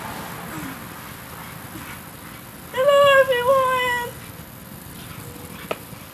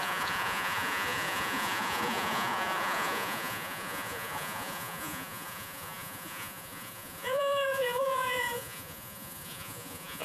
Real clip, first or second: first